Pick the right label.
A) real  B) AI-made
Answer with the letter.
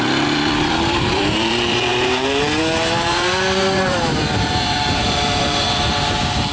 B